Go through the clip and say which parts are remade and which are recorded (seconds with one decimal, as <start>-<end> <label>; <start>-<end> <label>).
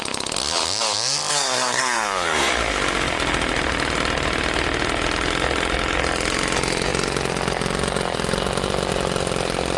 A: 0.0-1.3 recorded; 1.3-2.5 remade; 2.5-9.8 recorded